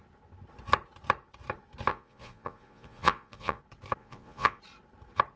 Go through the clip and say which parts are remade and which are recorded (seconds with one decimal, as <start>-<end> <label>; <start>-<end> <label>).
0.0-1.9 recorded; 1.9-3.6 remade; 3.6-4.0 recorded; 4.0-4.6 remade; 4.6-5.4 recorded